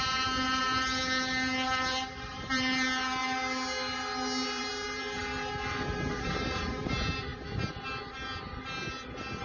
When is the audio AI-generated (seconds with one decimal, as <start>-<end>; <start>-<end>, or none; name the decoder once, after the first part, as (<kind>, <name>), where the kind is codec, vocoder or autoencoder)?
0.0-3.2 (vocoder, BigVGAN v2); 4.6-5.2; 6.1-7.3